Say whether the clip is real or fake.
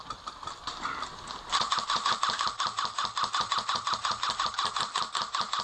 real